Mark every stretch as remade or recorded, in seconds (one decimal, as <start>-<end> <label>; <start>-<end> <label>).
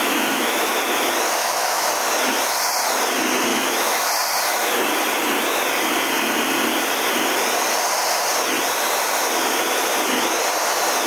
0.0-0.7 remade; 0.7-1.4 recorded; 1.4-1.9 remade; 1.9-3.5 recorded; 3.5-4.1 remade; 4.1-11.1 recorded